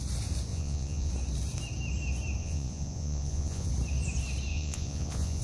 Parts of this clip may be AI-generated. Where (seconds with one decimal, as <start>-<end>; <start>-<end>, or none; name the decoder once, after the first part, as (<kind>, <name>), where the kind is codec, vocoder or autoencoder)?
0.5-1.1 (vocoder, Vocos); 2.4-3.7; 4.5-5.4